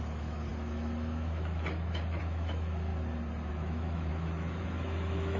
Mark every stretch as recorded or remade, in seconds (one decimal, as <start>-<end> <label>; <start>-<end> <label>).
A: 0.0-2.9 remade; 2.9-3.5 recorded; 3.5-5.4 remade